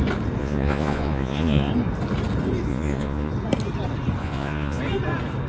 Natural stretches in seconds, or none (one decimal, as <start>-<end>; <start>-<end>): 0.0-0.4; 1.7-2.7; 3.3-4.2; 4.8-5.5